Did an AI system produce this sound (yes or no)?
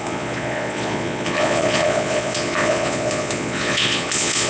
yes